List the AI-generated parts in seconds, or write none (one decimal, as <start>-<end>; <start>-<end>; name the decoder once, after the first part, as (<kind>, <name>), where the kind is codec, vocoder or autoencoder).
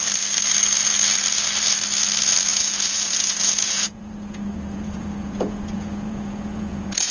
2.5-7.1 (vocoder, Vocos)